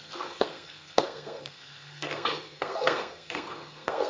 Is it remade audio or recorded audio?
remade